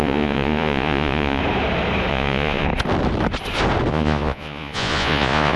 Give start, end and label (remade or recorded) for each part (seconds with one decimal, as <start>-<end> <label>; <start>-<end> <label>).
0.0-1.4 remade; 1.4-2.1 recorded; 2.1-2.7 remade; 2.7-3.9 recorded; 3.9-5.6 remade